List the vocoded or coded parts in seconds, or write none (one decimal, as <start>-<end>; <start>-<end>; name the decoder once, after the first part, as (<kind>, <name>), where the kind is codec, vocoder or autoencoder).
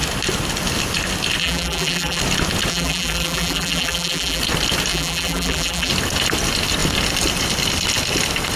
1.4-2.2 (vocoder, BigVGAN v2); 2.7-4.4; 4.9-5.9